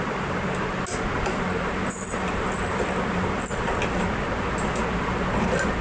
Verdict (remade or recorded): recorded